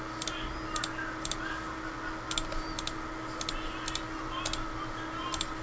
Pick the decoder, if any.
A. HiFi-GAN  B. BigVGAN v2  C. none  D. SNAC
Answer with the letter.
C